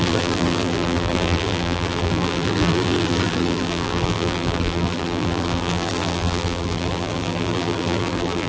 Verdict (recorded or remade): remade